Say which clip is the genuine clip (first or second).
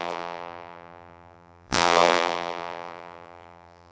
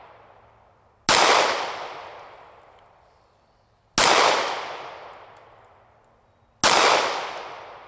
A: second